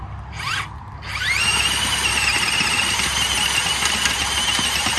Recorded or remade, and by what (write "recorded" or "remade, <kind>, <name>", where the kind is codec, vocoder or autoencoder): recorded